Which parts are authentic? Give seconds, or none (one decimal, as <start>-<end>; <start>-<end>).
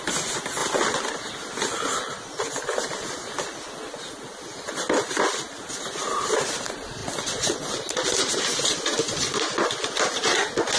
0.0-10.8